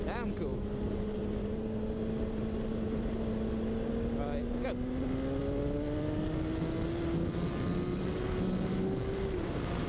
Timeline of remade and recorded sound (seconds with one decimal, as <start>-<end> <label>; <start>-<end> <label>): 0.0-0.5 recorded; 0.5-3.5 remade; 3.5-9.9 recorded